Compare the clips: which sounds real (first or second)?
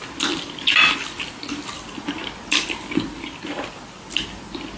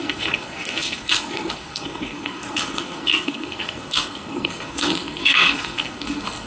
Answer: first